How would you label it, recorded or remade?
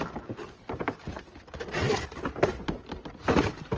recorded